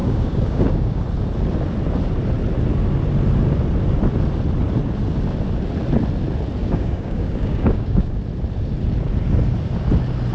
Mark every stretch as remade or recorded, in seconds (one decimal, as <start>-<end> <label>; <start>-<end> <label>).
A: 0.0-1.0 remade; 1.0-6.6 recorded; 6.6-8.2 remade; 8.2-10.3 recorded